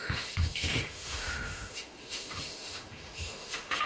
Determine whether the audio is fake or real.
fake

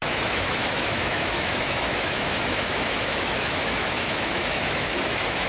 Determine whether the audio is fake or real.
fake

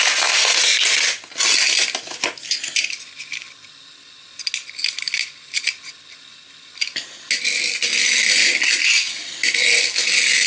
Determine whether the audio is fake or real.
real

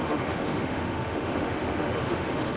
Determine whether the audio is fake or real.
fake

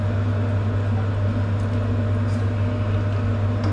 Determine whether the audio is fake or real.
real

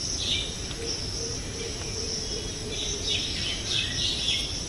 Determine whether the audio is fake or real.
real